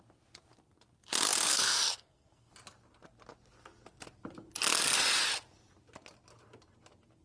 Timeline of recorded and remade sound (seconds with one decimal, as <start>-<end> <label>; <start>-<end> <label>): 0.0-1.5 recorded; 1.5-2.5 remade; 2.5-7.2 recorded